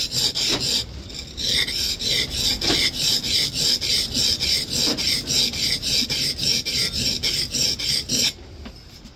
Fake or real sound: real